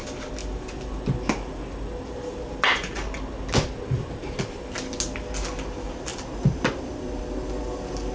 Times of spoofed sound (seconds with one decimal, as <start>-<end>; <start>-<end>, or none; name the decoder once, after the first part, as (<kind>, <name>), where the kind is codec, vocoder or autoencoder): none